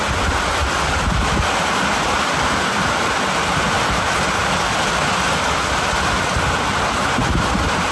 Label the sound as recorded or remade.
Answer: recorded